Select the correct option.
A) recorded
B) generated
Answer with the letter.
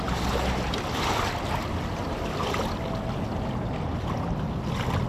A